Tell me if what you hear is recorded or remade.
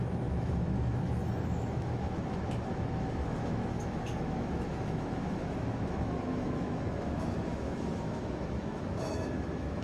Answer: remade